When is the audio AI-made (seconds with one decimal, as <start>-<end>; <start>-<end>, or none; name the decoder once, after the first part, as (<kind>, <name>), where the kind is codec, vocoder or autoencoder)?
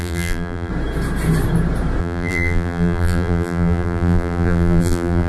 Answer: 0.0-0.7 (vocoder, BigVGAN v2); 2.0-5.3